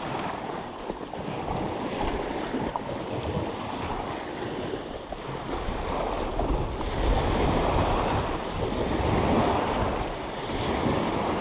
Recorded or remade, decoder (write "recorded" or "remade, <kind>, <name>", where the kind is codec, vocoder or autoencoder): recorded